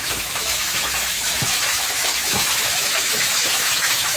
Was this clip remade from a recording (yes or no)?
yes